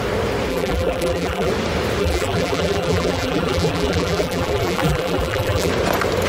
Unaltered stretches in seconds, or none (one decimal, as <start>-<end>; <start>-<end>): 0.0-0.5; 1.5-2.0; 5.7-6.3